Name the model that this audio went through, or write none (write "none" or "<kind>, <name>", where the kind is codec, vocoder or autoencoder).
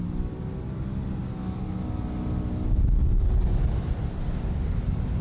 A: none